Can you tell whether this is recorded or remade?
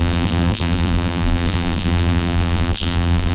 remade